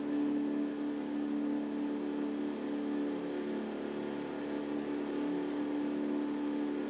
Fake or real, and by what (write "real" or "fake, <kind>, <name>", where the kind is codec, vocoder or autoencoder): real